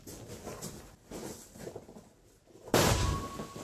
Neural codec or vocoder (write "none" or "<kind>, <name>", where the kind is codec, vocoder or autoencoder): none